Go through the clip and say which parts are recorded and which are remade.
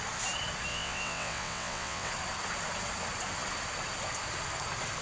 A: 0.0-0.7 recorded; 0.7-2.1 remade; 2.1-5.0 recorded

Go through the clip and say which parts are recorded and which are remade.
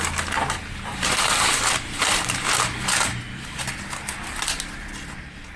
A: 0.0-0.9 recorded; 0.9-3.6 remade; 3.6-5.6 recorded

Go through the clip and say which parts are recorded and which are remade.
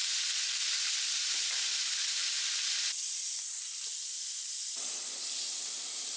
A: 0.0-0.8 remade; 0.8-2.2 recorded; 2.2-6.2 remade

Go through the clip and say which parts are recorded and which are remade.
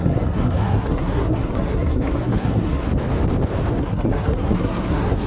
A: 0.0-2.9 remade; 2.9-3.7 recorded; 3.7-5.3 remade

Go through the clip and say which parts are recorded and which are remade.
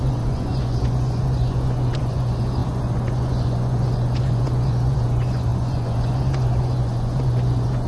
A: 0.0-7.9 remade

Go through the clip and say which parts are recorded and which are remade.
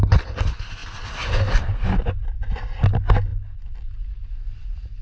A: 0.0-5.0 recorded